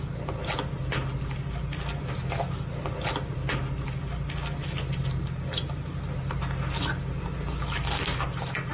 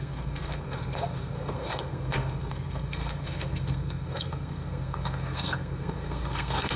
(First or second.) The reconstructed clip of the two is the second